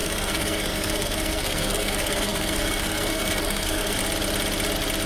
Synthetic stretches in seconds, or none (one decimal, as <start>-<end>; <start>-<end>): 0.0-4.0